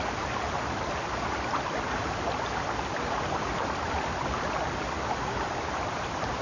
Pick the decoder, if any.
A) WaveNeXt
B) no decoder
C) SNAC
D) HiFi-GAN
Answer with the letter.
B